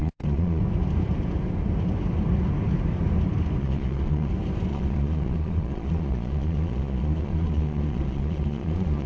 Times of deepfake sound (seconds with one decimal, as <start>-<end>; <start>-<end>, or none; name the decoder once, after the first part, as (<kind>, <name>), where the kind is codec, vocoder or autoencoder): 0.0-0.6 (vocoder, Vocos); 3.6-4.3; 4.7-9.1